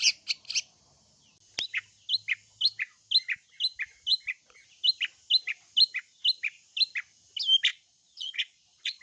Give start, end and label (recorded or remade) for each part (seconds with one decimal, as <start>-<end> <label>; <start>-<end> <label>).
0.0-7.7 recorded; 7.7-9.0 remade